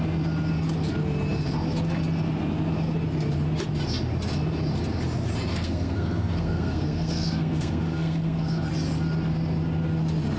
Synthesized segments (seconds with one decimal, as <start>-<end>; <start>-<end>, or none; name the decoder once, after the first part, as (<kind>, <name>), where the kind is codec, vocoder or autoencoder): 5.5-8.7 (codec, SNAC)